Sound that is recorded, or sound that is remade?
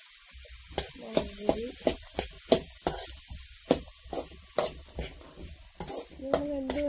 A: recorded